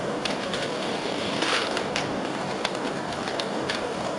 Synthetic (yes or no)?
yes